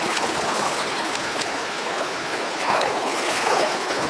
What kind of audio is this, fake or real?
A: fake